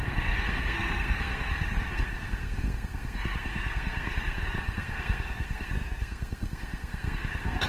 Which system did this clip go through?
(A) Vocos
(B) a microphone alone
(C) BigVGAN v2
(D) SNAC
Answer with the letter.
D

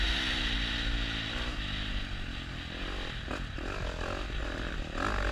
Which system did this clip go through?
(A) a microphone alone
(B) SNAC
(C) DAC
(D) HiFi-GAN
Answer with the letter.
A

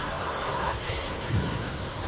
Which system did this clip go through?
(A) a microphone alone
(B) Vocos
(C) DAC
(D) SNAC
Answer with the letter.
D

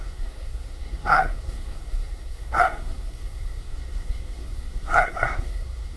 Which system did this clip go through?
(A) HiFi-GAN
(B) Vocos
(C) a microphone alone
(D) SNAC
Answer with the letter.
D